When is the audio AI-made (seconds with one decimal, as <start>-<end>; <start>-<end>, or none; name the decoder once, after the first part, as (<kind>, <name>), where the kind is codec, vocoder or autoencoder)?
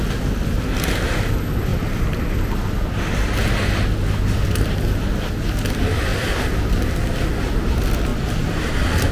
none